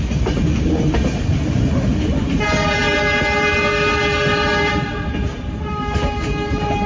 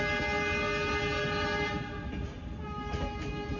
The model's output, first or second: first